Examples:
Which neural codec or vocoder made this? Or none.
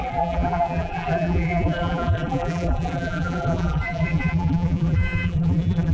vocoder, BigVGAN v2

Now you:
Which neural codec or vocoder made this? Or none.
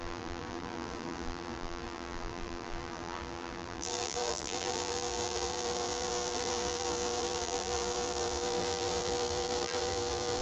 vocoder, BigVGAN v2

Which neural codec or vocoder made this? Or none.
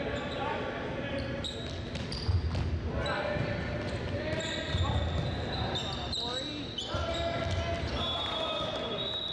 none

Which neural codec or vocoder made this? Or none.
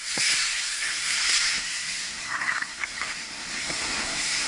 codec, SNAC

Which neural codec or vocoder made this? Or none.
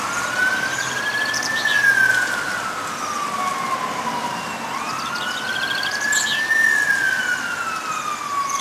none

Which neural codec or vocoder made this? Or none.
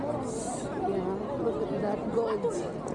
none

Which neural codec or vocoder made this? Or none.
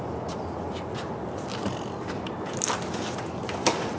none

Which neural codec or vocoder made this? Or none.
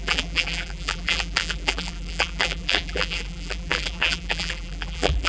vocoder, BigVGAN v2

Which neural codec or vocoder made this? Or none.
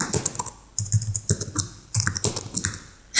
none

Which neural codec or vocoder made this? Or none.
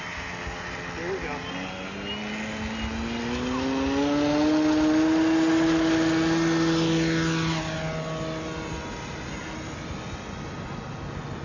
none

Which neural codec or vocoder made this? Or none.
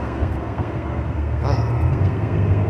codec, SNAC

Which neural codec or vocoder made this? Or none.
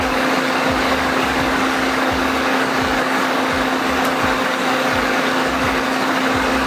codec, DAC